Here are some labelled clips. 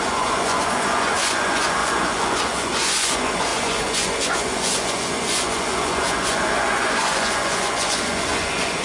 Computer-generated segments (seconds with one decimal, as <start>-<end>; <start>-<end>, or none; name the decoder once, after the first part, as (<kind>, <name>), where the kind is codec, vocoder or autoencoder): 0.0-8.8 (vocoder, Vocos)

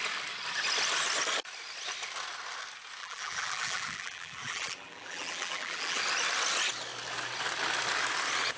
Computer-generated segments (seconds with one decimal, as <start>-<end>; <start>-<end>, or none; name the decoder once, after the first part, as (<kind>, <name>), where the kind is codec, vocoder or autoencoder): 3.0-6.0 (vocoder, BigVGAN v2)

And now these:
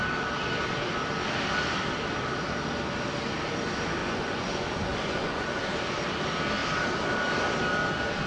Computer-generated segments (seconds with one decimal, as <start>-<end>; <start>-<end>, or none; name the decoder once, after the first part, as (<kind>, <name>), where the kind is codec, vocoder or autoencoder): 4.0-5.6 (vocoder, Vocos)